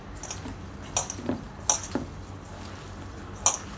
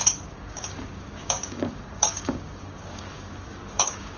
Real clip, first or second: first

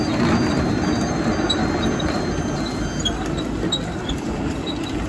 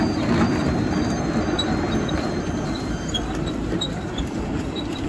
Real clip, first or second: first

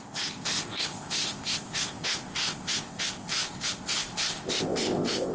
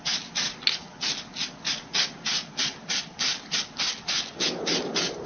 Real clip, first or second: second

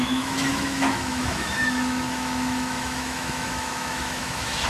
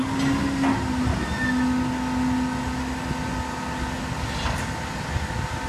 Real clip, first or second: second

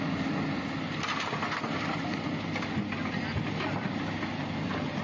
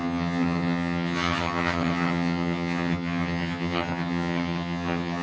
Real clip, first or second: first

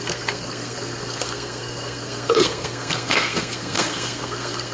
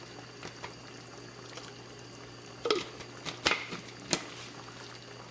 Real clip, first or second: second